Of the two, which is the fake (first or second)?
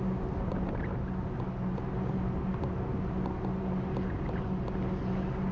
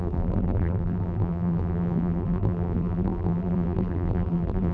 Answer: second